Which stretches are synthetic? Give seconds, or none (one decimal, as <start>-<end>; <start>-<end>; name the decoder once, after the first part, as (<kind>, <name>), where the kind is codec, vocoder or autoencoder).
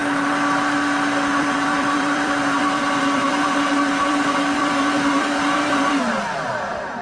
1.4-7.0 (vocoder, BigVGAN v2)